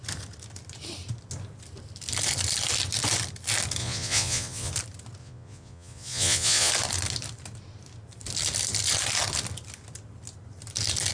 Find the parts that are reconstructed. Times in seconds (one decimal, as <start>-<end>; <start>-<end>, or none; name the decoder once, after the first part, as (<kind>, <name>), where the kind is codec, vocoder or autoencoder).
3.8-4.7 (vocoder, Vocos); 5.2-6.7